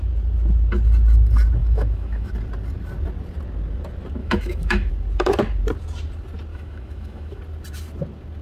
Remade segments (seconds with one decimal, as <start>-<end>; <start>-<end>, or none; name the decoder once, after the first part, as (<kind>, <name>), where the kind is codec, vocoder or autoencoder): 1.6-2.3 (autoencoder, DAC-VAE); 4.2-4.9; 6.5-7.4